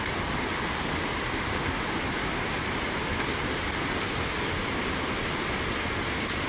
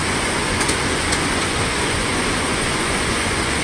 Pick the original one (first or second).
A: first